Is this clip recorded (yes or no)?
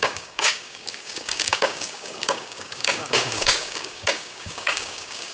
no